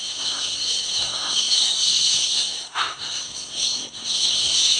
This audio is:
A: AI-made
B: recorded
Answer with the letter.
A